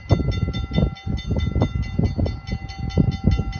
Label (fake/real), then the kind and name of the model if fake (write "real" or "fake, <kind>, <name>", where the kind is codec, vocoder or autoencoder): real